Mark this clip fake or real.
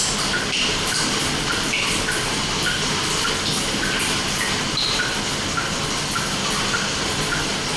real